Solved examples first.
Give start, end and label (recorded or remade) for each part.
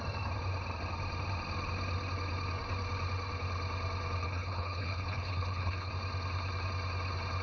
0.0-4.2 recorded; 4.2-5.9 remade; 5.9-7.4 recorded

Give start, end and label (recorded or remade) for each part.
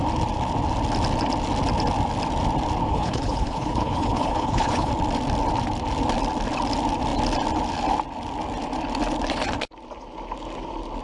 0.0-2.9 recorded; 2.9-4.9 remade; 4.9-11.0 recorded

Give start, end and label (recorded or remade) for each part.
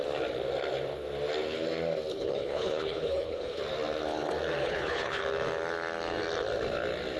0.0-2.1 recorded; 2.1-3.6 remade; 3.6-4.6 recorded; 4.6-5.2 remade; 5.2-7.2 recorded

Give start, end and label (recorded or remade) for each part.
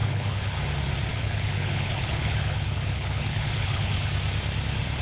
0.0-0.6 remade; 0.6-1.1 recorded; 1.1-4.1 remade; 4.1-5.0 recorded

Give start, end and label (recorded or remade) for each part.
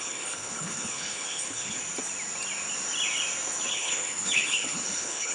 0.0-1.8 remade; 1.8-3.7 recorded; 3.7-5.3 remade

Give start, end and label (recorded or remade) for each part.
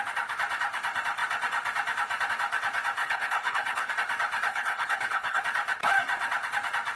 0.0-3.0 recorded; 3.0-3.9 remade; 3.9-4.5 recorded; 4.5-5.4 remade; 5.4-7.0 recorded